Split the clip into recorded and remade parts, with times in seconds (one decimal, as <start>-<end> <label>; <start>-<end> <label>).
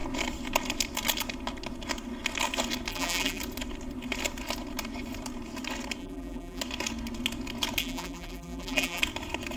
0.0-2.9 recorded; 2.9-3.4 remade; 3.4-6.0 recorded; 6.0-6.6 remade; 6.6-7.8 recorded; 7.8-9.0 remade; 9.0-9.6 recorded